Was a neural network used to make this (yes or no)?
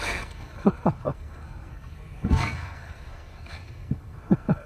yes